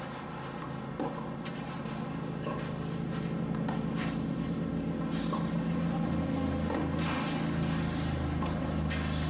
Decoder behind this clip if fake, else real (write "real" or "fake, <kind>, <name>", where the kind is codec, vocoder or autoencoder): real